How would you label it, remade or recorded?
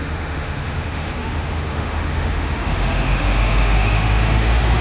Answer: remade